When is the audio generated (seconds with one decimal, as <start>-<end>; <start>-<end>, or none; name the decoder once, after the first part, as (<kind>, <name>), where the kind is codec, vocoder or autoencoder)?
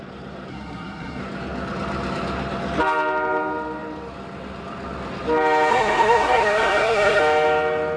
0.5-1.2 (codec, SNAC); 5.7-7.2